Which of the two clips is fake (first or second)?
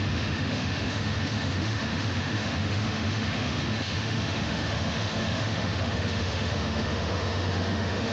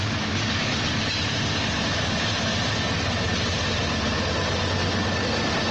first